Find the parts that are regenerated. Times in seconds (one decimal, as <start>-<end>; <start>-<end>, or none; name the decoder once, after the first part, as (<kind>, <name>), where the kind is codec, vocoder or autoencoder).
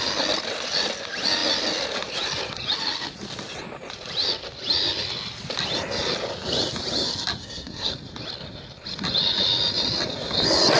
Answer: 7.4-7.9 (codec, SNAC)